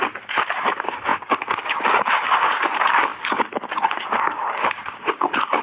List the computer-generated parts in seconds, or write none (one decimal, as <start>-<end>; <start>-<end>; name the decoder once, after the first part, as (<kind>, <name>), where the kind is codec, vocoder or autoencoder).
0.0-5.6 (codec, DAC)